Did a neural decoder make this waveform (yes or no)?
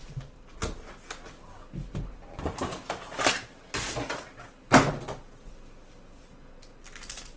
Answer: no